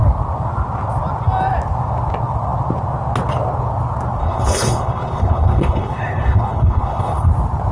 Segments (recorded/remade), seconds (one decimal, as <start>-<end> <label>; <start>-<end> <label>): 0.0-4.2 recorded; 4.2-7.3 remade; 7.3-7.7 recorded

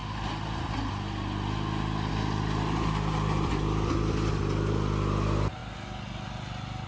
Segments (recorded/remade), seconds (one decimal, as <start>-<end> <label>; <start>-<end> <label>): 0.0-6.9 recorded

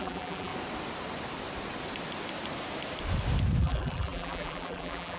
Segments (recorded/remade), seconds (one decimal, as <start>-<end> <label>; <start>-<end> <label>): 0.0-0.5 remade; 0.5-3.6 recorded; 3.6-5.2 remade

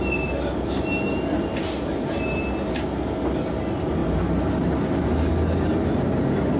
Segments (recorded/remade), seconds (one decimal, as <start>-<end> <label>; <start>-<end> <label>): 0.0-6.6 recorded

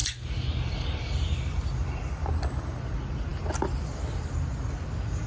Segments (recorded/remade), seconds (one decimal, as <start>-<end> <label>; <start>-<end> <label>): 0.0-5.3 recorded

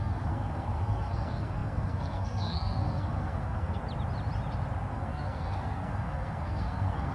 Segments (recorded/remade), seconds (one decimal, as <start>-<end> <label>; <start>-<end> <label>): 0.0-3.8 remade; 3.8-4.9 recorded; 4.9-7.1 remade